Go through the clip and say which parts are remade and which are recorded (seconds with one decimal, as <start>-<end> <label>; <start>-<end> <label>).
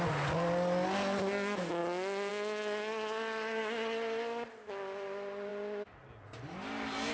0.0-7.1 recorded